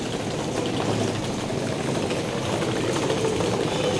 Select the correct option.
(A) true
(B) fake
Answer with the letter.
A